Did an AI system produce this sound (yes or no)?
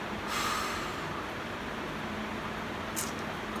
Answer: no